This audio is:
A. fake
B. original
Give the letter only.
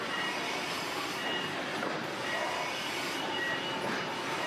A